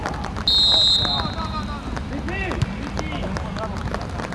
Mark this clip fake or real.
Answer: real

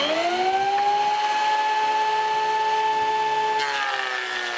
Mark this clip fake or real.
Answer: real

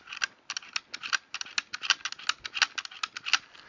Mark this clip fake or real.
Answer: real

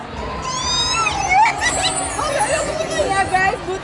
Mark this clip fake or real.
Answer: real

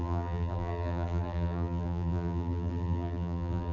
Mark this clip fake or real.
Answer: fake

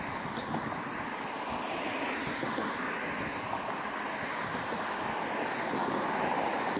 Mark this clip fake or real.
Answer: real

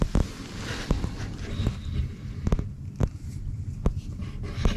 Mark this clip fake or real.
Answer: real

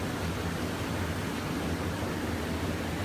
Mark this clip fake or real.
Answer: real